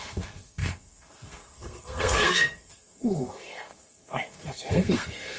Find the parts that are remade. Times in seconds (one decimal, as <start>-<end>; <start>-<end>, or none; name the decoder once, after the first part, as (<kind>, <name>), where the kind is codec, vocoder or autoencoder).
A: 0.0-5.4 (codec, SNAC)